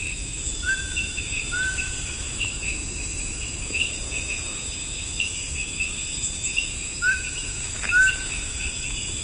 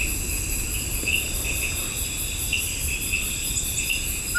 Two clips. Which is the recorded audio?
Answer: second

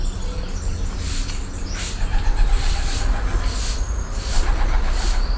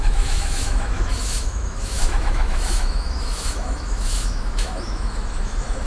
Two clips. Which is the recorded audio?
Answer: first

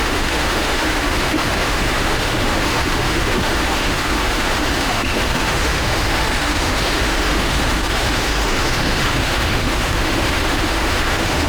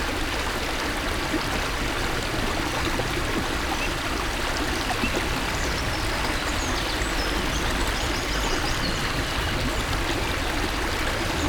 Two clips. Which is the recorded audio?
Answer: second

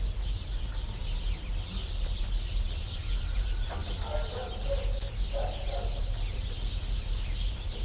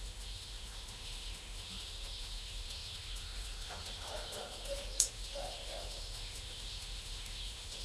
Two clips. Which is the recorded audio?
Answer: first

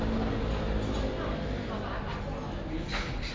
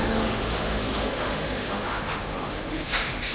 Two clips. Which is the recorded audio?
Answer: first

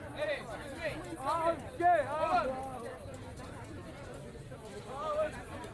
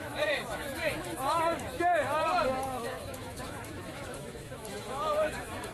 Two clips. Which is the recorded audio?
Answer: first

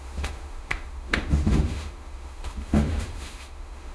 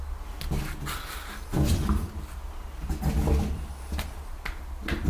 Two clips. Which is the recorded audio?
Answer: second